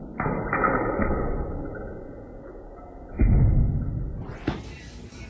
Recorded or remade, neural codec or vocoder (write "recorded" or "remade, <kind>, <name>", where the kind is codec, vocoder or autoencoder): recorded